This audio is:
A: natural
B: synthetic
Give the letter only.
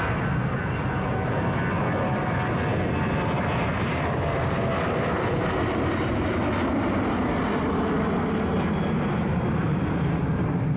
A